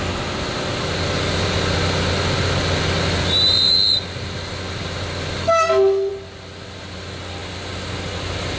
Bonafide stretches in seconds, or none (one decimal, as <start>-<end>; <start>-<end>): 0.0-5.4; 6.1-8.6